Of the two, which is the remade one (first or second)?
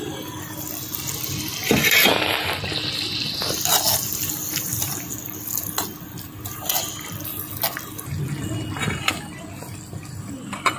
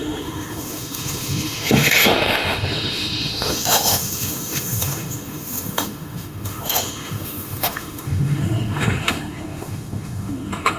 second